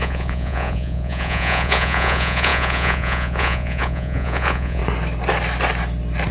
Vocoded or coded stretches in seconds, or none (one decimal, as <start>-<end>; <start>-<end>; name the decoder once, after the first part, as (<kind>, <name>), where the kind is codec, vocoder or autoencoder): 0.0-4.8 (vocoder, Vocos)